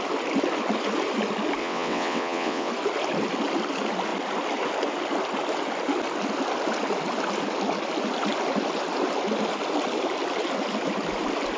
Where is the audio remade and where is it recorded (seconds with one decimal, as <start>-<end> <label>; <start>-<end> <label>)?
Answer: 0.0-1.6 recorded; 1.6-2.7 remade; 2.7-11.6 recorded